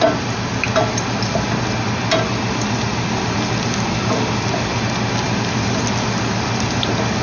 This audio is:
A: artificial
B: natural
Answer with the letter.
B